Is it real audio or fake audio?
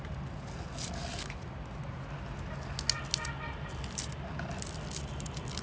real